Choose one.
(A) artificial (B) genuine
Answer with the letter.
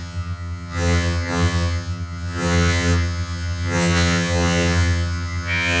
A